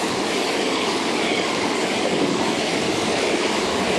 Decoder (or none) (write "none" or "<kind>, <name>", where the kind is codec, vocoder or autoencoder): codec, DAC